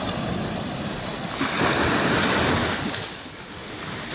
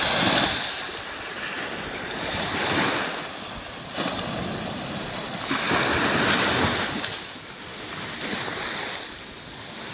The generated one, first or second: first